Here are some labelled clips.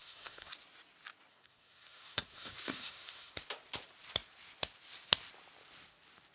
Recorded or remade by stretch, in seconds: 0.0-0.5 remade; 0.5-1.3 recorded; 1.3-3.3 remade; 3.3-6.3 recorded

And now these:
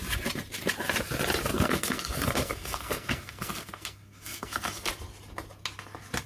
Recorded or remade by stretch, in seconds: 0.0-1.5 recorded; 1.5-4.9 remade; 4.9-6.3 recorded

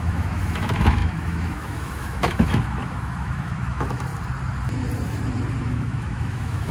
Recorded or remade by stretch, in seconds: 0.0-4.1 remade; 4.1-5.6 recorded; 5.6-6.7 remade

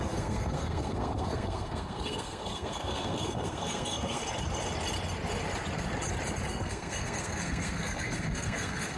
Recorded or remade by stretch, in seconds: 0.0-4.2 remade; 4.2-6.5 recorded; 6.5-9.0 remade

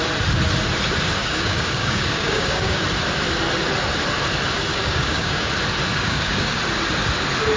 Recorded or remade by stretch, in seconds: 0.0-1.2 recorded; 1.2-2.8 remade; 2.8-4.7 recorded; 4.7-5.5 remade; 5.5-5.9 recorded; 5.9-6.6 remade; 6.6-7.6 recorded

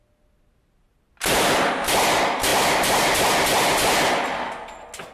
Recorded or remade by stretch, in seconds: 0.0-5.1 recorded